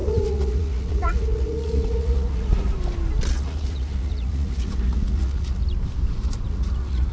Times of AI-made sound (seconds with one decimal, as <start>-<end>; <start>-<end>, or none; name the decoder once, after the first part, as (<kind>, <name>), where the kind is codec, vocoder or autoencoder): 0.0-2.7 (vocoder, Vocos); 3.3-5.6; 6.5-7.1